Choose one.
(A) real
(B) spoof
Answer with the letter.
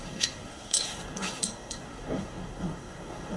B